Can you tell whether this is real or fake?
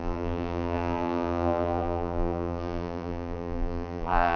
fake